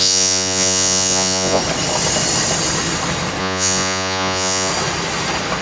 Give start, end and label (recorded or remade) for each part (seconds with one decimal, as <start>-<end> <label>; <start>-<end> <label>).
0.0-1.6 remade; 1.6-3.4 recorded; 3.4-4.7 remade; 4.7-5.6 recorded